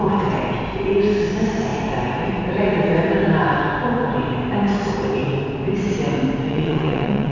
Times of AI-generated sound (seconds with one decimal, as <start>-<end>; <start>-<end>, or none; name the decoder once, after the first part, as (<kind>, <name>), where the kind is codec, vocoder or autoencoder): 6.5-7.3 (vocoder, WaveNeXt)